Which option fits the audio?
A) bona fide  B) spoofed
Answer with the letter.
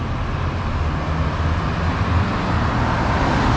A